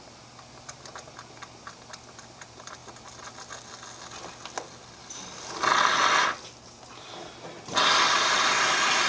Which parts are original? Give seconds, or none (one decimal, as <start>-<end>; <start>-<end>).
0.0-9.1